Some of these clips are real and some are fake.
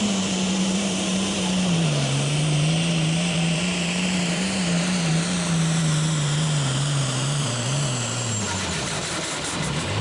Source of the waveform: fake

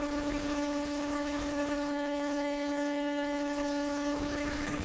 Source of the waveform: fake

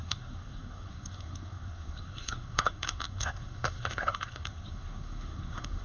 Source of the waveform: fake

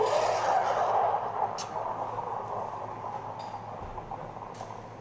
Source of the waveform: real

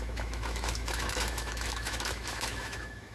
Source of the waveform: fake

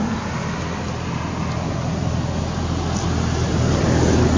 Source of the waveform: real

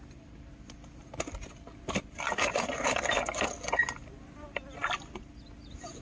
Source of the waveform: real